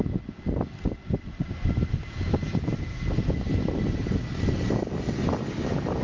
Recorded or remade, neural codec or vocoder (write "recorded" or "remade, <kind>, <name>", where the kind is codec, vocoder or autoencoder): recorded